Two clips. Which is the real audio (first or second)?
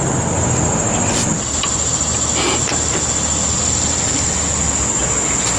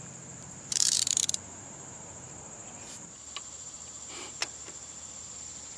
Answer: first